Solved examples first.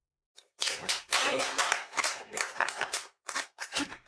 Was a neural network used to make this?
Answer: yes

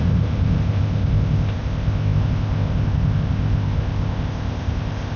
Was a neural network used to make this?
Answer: yes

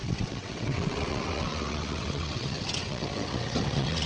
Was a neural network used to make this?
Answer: yes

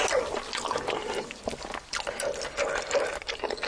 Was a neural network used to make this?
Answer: no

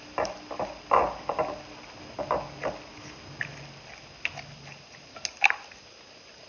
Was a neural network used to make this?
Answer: no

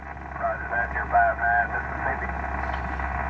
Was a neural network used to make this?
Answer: no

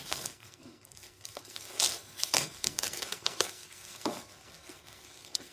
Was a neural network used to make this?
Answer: yes